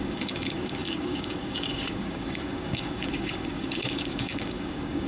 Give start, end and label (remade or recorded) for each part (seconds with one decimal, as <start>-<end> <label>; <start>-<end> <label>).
0.0-5.1 remade